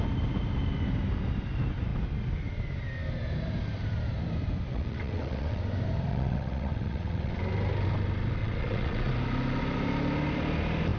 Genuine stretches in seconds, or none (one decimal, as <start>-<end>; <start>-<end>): 0.0-4.7; 5.6-6.1; 7.4-8.4; 9.1-11.0